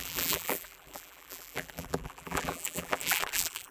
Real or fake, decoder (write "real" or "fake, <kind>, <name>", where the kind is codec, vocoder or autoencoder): fake, vocoder, BigVGAN v2